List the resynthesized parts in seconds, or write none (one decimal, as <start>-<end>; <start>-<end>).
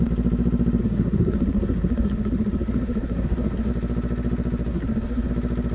0.8-3.7; 4.7-5.3